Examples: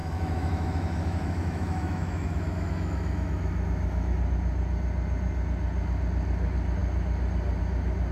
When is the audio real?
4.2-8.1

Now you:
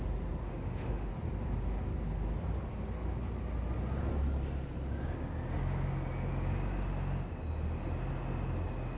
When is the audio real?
0.0-0.4; 1.1-9.0

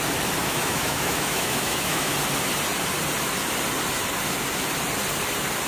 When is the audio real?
0.0-0.4; 2.1-5.7

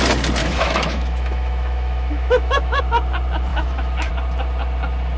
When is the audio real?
0.0-0.4; 2.8-3.5; 4.1-5.2

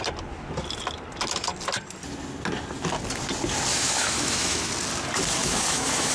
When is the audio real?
0.0-3.7; 4.7-5.4